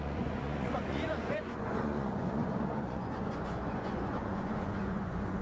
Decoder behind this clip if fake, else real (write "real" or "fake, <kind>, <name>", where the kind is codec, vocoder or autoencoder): fake, vocoder, Vocos